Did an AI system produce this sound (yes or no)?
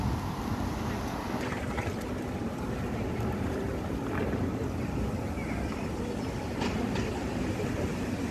no